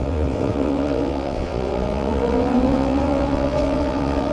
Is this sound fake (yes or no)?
yes